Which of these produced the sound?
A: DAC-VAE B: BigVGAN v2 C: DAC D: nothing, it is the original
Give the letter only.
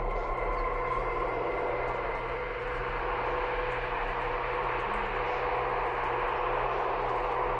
D